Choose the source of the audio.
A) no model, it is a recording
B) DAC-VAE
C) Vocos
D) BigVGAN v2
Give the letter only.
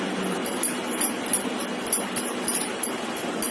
A